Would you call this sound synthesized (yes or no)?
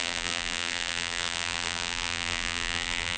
yes